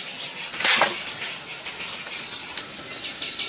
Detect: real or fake real